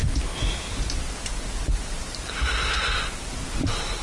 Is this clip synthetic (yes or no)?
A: no